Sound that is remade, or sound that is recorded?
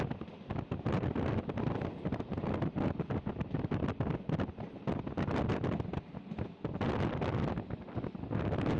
recorded